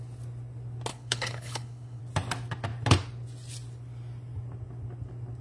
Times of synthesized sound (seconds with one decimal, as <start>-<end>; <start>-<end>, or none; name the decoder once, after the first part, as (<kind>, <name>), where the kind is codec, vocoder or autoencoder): 0.9-2.0 (codec, HILCodec)